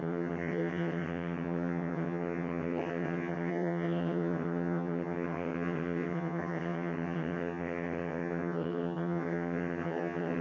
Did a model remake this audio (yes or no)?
yes